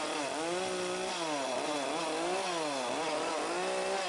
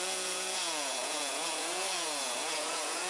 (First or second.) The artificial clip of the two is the second